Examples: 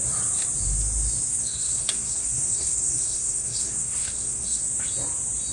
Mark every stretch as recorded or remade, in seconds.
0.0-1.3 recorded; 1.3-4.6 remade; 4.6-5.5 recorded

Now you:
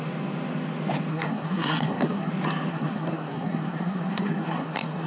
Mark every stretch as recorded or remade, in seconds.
0.0-1.1 recorded; 1.1-2.3 remade; 2.3-2.7 recorded; 2.7-5.1 remade

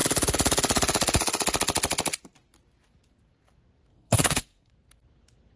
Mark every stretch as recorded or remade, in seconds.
0.0-3.9 recorded; 3.9-4.7 remade; 4.7-5.6 recorded

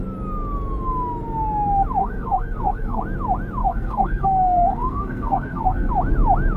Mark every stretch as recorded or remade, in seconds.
0.0-2.0 recorded; 2.0-3.0 remade; 3.0-3.6 recorded; 3.6-5.9 remade; 5.9-6.6 recorded

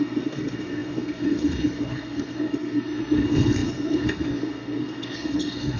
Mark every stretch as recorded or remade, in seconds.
0.0-5.8 remade

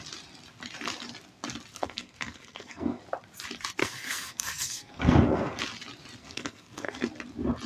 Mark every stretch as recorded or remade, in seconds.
0.0-1.7 recorded; 1.7-3.0 remade; 3.0-3.8 recorded; 3.8-5.6 remade; 5.6-6.2 recorded; 6.2-7.1 remade; 7.1-7.7 recorded